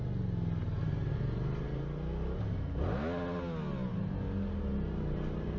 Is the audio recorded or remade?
recorded